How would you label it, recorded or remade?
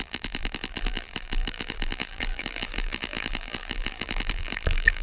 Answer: remade